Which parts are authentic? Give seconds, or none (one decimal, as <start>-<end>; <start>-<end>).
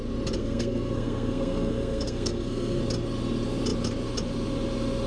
0.0-0.4; 2.8-5.1